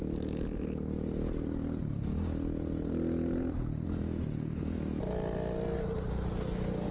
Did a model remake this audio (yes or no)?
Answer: no